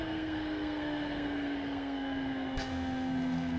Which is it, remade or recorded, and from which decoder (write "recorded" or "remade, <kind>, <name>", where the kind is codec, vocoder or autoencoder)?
remade, codec, SNAC